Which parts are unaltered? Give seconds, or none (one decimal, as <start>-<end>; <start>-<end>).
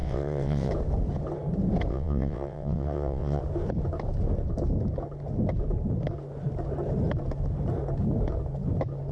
0.7-1.9; 3.4-9.1